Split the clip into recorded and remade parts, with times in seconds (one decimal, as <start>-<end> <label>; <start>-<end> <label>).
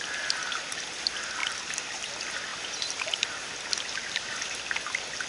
0.0-1.4 recorded; 1.4-2.1 remade; 2.1-2.5 recorded; 2.5-4.6 remade; 4.6-5.3 recorded